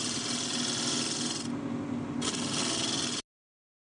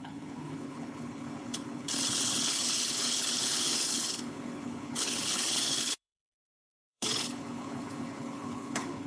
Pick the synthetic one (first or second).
second